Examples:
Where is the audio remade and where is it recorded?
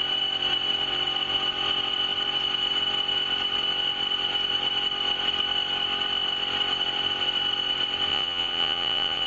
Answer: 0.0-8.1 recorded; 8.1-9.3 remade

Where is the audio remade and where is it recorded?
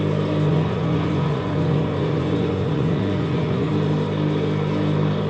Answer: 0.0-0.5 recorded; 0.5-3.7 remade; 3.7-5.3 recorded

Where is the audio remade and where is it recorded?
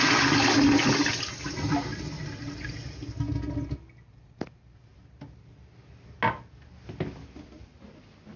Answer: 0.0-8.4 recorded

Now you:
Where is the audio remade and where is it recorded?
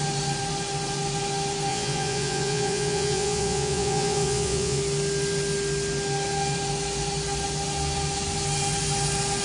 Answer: 0.0-1.7 recorded; 1.7-4.8 remade; 4.8-9.4 recorded